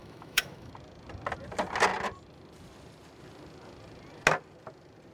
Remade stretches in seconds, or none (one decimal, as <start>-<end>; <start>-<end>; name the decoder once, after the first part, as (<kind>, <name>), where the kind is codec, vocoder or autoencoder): 0.0-0.7 (autoencoder, DAC-VAE)